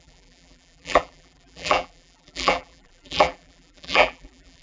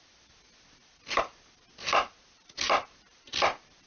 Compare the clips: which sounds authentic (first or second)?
second